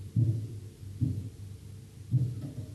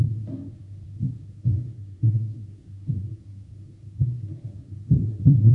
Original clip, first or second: first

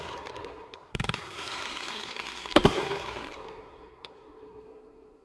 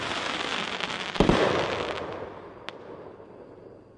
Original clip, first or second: second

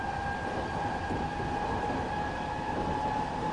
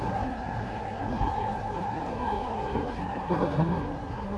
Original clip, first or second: first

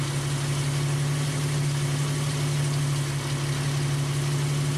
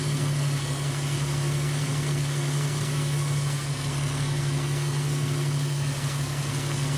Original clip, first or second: first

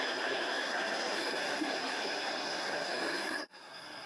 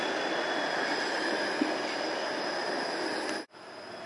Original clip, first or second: second